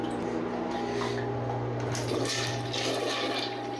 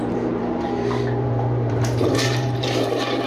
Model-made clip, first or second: second